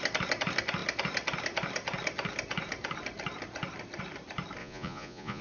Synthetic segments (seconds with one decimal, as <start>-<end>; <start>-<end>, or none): 4.6-5.4